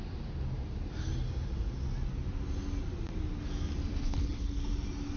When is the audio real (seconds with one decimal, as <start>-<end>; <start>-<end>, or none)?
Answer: 0.0-3.9; 4.6-5.2